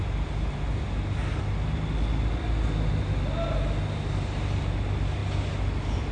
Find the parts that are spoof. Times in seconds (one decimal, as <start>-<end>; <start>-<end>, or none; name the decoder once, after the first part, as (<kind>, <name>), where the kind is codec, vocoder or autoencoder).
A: none